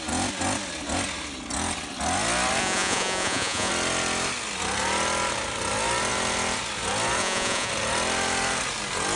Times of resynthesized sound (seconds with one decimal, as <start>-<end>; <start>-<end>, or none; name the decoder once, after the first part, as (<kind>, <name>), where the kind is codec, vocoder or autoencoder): 2.6-3.7 (vocoder, Vocos); 7.2-7.7